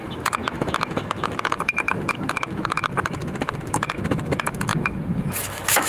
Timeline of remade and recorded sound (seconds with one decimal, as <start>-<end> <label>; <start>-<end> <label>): 0.0-5.9 remade

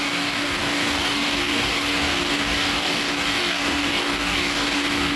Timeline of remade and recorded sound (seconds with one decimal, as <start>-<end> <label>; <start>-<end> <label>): 0.0-5.2 remade

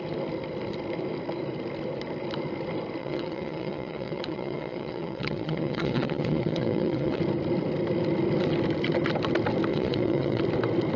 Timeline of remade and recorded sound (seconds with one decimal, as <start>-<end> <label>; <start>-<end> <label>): 0.0-3.0 recorded; 3.0-7.2 remade; 7.2-9.7 recorded; 9.7-10.4 remade; 10.4-11.0 recorded

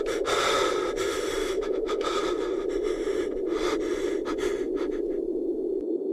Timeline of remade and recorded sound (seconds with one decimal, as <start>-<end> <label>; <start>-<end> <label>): 0.0-1.4 recorded; 1.4-2.2 remade; 2.2-6.1 recorded

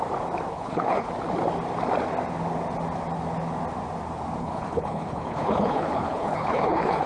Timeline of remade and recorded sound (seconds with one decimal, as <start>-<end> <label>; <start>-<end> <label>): 0.0-0.5 recorded; 0.5-1.1 remade; 1.1-4.4 recorded; 4.4-7.1 remade

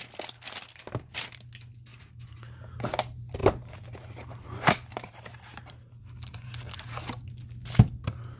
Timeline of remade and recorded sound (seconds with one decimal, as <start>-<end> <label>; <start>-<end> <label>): 0.0-1.9 recorded; 1.9-2.9 remade; 2.9-3.4 recorded; 3.4-6.0 remade; 6.0-8.4 recorded

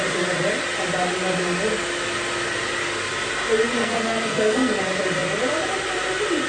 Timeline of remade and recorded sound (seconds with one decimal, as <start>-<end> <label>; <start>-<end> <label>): 0.0-3.8 recorded; 3.8-4.8 remade; 4.8-6.5 recorded